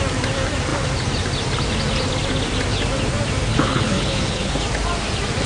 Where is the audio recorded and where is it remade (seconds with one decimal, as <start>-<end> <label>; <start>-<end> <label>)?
0.0-3.5 recorded; 3.5-4.5 remade; 4.5-5.5 recorded